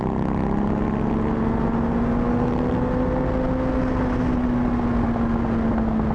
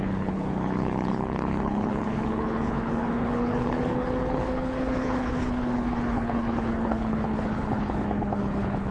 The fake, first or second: second